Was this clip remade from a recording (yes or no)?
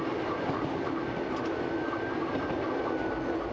no